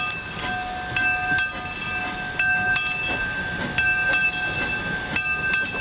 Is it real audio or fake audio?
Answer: real